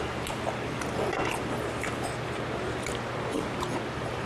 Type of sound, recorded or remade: recorded